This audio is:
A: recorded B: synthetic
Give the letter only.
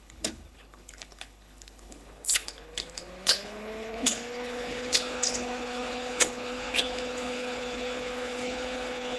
B